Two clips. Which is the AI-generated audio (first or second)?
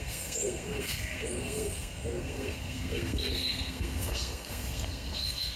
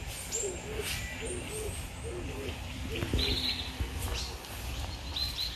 first